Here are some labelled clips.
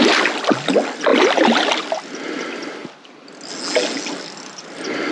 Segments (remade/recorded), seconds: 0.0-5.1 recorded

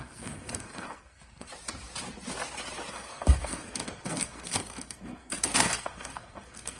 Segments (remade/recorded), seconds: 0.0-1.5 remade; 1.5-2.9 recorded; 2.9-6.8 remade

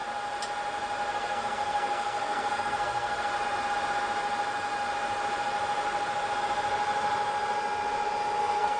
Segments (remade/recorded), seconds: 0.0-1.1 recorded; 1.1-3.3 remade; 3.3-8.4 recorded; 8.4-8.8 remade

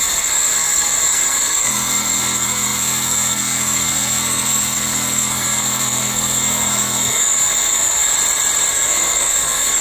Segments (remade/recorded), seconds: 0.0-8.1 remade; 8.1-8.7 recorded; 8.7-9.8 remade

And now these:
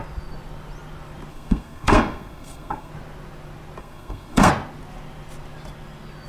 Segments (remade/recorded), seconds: 0.0-1.3 recorded; 1.3-2.9 remade; 2.9-3.8 recorded; 3.8-4.5 remade; 4.5-6.3 recorded